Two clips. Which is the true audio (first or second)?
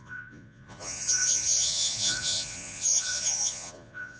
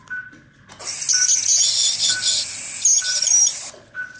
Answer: second